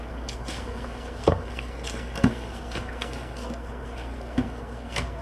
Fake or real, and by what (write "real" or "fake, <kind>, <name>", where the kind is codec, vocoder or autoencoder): fake, codec, SNAC